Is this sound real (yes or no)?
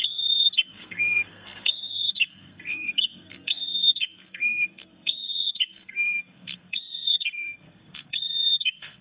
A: no